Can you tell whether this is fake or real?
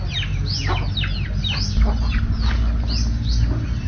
real